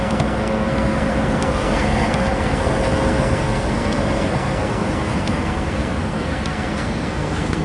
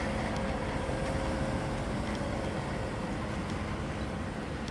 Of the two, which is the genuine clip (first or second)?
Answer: second